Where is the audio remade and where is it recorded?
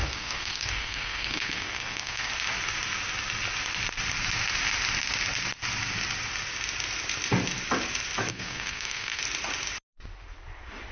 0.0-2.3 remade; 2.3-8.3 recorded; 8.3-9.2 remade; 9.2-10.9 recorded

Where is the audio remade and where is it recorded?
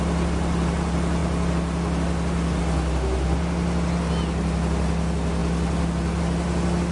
0.0-6.9 recorded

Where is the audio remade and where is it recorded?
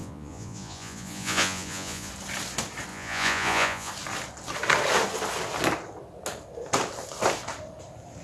0.0-2.1 remade; 2.1-2.9 recorded; 2.9-3.9 remade; 3.9-8.2 recorded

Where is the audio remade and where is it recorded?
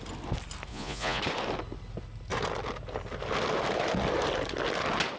0.0-0.7 recorded; 0.7-1.2 remade; 1.2-5.2 recorded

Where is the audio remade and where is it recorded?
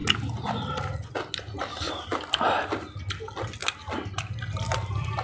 0.0-5.2 recorded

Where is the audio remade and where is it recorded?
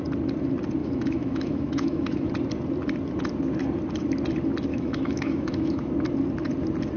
0.0-0.8 recorded; 0.8-2.3 remade; 2.3-4.7 recorded; 4.7-5.9 remade; 5.9-7.0 recorded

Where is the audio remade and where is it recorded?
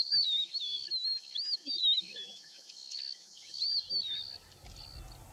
0.0-0.4 recorded; 0.4-3.6 remade; 3.6-5.3 recorded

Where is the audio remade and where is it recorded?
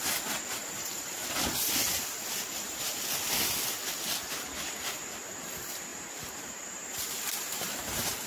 0.0-0.6 recorded; 0.6-1.3 remade; 1.3-5.9 recorded; 5.9-8.3 remade